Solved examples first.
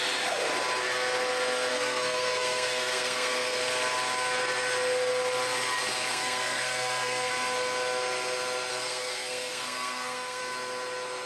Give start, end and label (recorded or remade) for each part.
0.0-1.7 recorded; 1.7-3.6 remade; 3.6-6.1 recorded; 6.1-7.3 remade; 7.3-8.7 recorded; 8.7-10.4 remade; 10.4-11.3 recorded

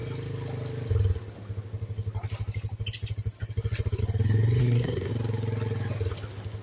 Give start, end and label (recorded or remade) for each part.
0.0-4.6 recorded; 4.6-5.1 remade; 5.1-6.6 recorded

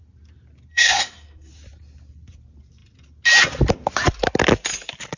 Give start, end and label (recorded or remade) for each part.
0.0-0.7 recorded; 0.7-1.5 remade; 1.5-5.2 recorded

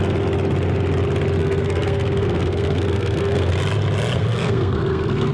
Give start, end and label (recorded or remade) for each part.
0.0-1.4 recorded; 1.4-3.5 remade; 3.5-4.1 recorded; 4.1-5.3 remade